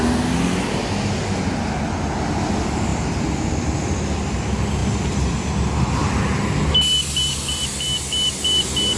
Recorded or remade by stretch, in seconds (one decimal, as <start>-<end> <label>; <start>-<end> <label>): 0.0-9.0 recorded